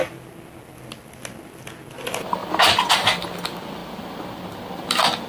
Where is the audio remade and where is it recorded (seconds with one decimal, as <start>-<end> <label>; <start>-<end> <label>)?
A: 0.0-5.3 recorded